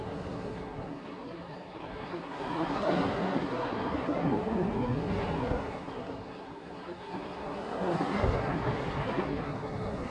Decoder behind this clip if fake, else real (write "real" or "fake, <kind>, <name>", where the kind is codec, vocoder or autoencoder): fake, codec, SNAC